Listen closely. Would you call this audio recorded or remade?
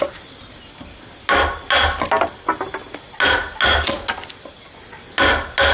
recorded